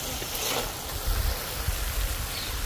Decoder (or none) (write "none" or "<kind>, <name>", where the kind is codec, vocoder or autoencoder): none